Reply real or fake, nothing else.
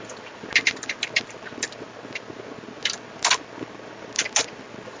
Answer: real